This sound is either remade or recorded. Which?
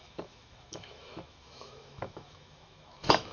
remade